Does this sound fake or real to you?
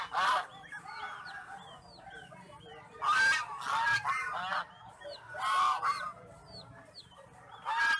real